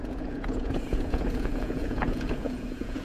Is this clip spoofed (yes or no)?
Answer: yes